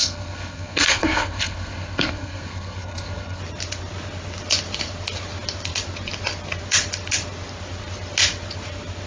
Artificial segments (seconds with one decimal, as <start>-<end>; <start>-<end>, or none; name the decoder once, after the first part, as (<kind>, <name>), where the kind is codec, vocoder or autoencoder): 0.0-3.4 (codec, SNAC)